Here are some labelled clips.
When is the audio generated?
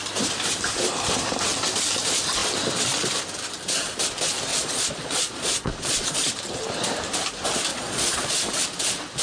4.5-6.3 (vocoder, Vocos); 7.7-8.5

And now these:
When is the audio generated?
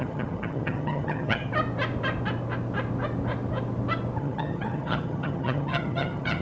0.0-1.5 (vocoder, HiFi-GAN); 4.2-6.4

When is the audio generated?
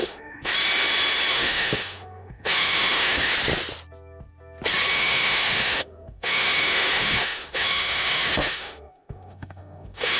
0.0-0.5 (autoencoder, DAC-VAE); 1.3-3.3; 4.9-10.2